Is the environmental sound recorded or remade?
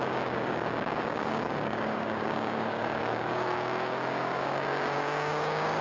remade